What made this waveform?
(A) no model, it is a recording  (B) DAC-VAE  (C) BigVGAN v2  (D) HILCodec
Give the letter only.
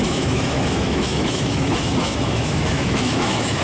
B